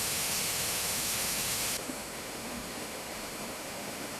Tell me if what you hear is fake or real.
fake